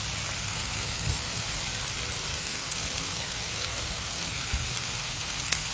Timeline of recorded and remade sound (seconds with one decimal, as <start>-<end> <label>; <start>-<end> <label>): 0.0-0.4 recorded; 0.4-1.6 remade; 1.6-2.3 recorded; 2.3-5.7 remade